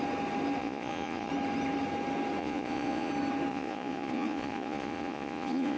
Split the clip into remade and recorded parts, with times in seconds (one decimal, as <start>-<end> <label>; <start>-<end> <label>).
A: 0.0-0.6 recorded; 0.6-1.3 remade; 1.3-2.4 recorded; 2.4-3.1 remade; 3.1-3.5 recorded; 3.5-5.8 remade